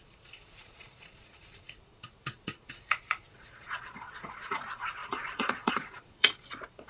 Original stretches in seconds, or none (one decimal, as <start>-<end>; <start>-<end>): none